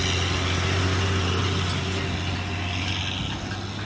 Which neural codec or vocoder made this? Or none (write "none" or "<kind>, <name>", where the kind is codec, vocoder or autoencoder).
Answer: none